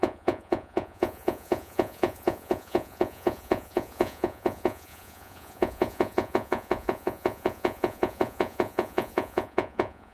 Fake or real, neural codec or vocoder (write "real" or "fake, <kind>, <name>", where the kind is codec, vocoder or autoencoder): fake, vocoder, Vocos